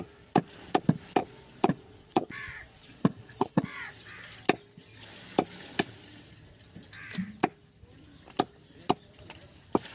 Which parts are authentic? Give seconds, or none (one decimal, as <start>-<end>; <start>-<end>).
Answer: 0.0-1.2; 3.8-9.9